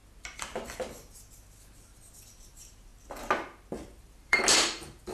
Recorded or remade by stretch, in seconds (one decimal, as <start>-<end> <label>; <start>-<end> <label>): 0.0-2.3 recorded; 2.3-2.9 remade; 2.9-4.0 recorded; 4.0-5.1 remade